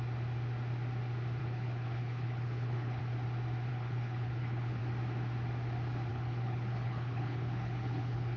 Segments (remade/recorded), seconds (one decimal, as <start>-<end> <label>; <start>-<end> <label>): 0.0-1.4 recorded; 1.4-3.0 remade; 3.0-3.7 recorded; 3.7-4.8 remade; 4.8-6.1 recorded; 6.1-8.4 remade